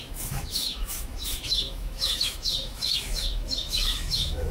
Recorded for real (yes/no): no